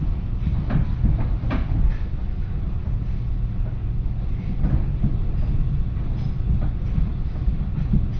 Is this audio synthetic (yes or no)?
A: no